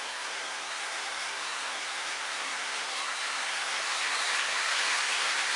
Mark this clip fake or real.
fake